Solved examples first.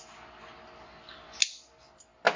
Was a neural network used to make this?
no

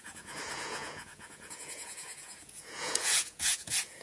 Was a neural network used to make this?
yes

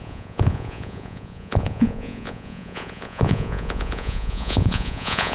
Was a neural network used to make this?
yes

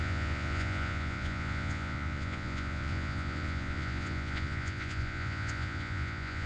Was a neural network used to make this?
yes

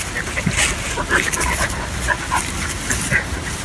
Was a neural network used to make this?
no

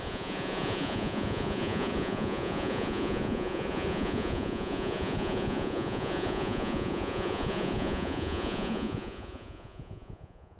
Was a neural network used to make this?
yes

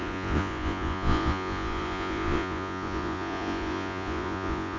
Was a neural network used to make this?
yes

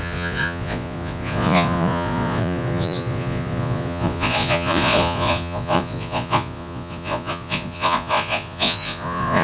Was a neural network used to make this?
yes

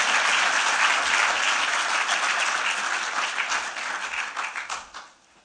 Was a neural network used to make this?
no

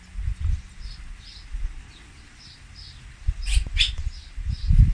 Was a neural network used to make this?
no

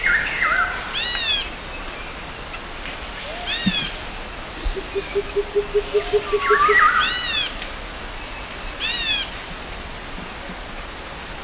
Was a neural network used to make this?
no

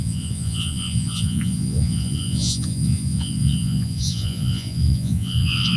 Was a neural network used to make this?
yes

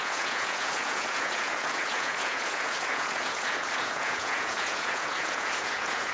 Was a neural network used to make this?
yes